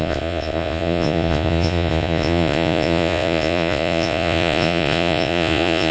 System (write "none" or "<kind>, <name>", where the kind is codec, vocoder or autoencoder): vocoder, Vocos